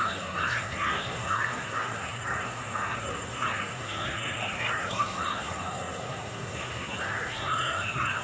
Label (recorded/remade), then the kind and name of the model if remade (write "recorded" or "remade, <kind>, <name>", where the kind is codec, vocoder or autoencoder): remade, codec, SNAC